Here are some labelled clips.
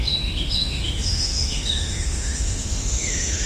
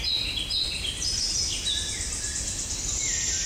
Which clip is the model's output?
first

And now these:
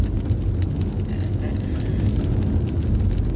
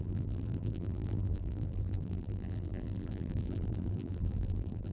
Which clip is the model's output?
second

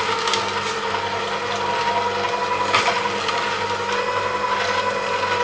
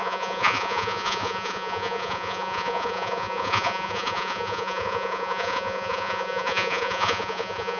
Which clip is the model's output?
second